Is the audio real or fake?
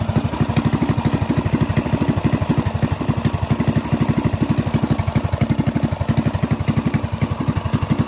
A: real